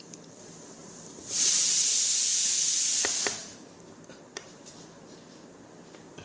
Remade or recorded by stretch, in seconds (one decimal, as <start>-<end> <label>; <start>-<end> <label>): 0.0-0.8 recorded; 0.8-1.9 remade; 1.9-2.3 recorded; 2.3-3.0 remade; 3.0-3.4 recorded; 3.4-4.7 remade; 4.7-6.2 recorded